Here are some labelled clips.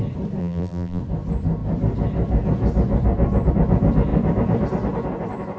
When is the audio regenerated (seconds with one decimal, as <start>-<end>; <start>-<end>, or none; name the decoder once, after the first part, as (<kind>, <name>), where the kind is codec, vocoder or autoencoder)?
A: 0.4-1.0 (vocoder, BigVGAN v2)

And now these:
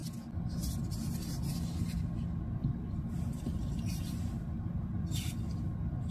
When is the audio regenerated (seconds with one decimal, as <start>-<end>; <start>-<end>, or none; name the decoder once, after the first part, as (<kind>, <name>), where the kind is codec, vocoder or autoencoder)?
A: 2.6-5.2 (vocoder, BigVGAN v2)

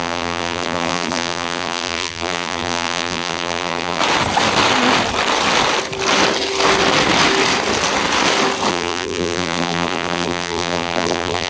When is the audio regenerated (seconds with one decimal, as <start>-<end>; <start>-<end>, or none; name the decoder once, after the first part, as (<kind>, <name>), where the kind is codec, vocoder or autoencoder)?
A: 0.0-4.0 (vocoder, BigVGAN v2); 8.7-11.5

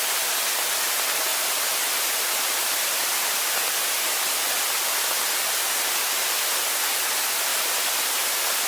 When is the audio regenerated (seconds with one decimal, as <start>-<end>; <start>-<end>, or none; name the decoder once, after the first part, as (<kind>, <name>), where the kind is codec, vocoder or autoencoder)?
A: 1.3-5.3 (vocoder, BigVGAN v2); 7.5-8.1